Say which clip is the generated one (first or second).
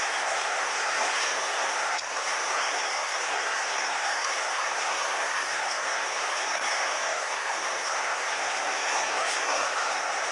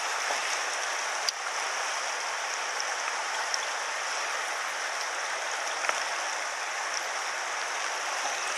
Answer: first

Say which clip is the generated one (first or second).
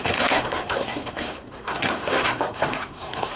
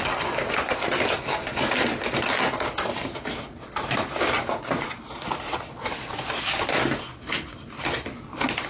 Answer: first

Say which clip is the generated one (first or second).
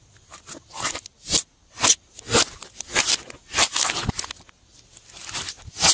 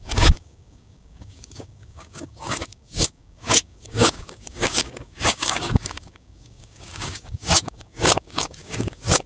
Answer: second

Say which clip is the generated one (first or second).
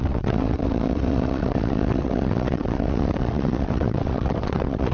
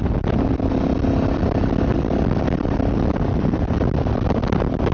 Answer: first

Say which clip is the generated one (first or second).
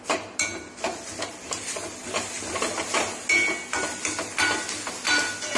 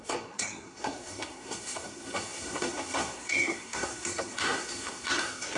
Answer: second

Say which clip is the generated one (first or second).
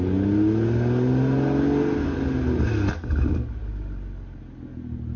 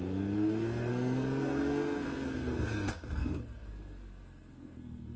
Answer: second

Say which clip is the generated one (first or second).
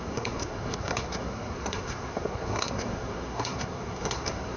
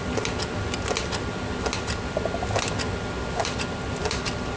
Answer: first